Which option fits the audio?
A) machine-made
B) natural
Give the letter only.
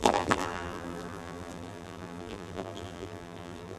A